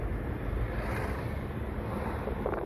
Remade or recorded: recorded